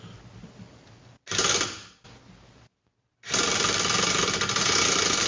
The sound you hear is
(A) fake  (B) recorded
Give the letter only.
B